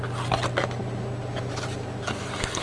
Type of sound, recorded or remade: recorded